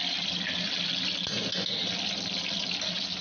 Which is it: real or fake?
real